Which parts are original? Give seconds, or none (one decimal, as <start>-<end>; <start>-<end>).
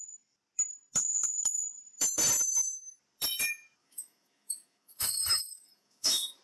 0.0-1.3; 1.8-3.8